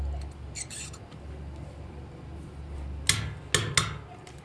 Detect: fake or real real